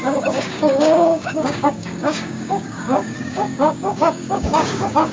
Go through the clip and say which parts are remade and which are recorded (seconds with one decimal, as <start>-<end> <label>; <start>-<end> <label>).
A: 0.0-5.1 remade